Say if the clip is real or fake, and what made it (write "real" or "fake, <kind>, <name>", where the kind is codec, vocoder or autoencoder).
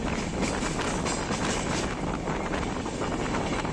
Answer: real